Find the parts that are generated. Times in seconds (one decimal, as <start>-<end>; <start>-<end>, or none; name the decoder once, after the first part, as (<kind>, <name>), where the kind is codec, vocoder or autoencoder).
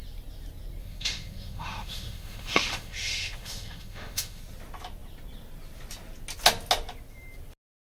0.8-4.4 (autoencoder, DAC-VAE)